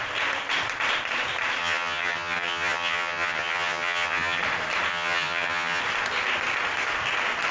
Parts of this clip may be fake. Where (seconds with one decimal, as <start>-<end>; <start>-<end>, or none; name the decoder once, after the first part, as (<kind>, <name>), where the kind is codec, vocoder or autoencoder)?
1.6-4.4 (vocoder, HiFi-GAN); 4.9-5.8

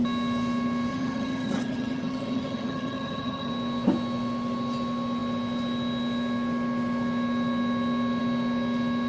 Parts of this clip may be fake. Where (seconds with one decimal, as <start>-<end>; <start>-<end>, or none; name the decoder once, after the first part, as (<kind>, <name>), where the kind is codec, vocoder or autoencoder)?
0.9-3.5 (vocoder, HiFi-GAN)